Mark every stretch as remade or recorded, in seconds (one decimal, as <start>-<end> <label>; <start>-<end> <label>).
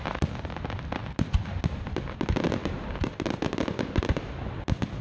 0.0-5.0 recorded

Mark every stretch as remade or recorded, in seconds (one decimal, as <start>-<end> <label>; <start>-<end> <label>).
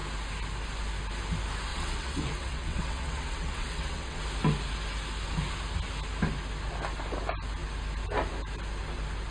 0.0-1.7 recorded; 1.7-4.2 remade; 4.2-9.3 recorded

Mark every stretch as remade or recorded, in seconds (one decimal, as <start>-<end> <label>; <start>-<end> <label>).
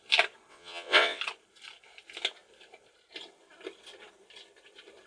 0.0-0.5 recorded; 0.5-1.2 remade; 1.2-5.1 recorded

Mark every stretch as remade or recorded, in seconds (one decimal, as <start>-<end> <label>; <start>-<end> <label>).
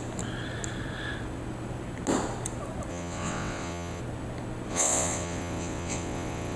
0.0-2.9 recorded; 2.9-4.0 remade; 4.0-4.7 recorded; 4.7-6.6 remade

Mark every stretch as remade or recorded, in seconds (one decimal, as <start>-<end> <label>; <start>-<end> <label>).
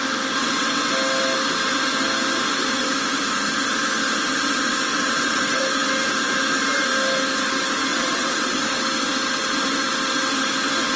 0.0-0.4 recorded; 0.4-0.9 remade; 0.9-4.9 recorded; 4.9-5.6 remade; 5.6-7.9 recorded; 7.9-8.6 remade; 8.6-11.0 recorded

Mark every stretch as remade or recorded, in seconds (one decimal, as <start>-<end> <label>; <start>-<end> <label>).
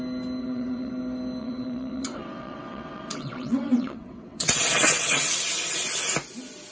0.0-0.4 recorded; 0.4-0.9 remade; 0.9-1.4 recorded; 1.4-5.4 remade; 5.4-6.7 recorded